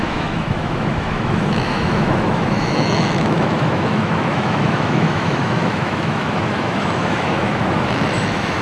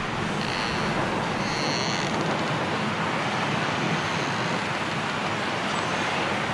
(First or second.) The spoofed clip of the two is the first